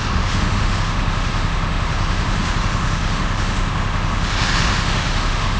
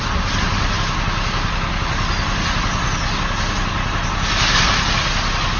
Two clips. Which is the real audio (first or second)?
second